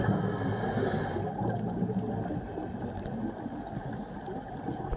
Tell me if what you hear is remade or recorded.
recorded